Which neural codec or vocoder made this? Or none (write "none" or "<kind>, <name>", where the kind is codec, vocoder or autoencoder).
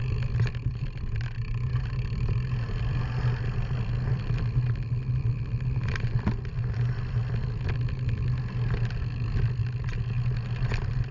none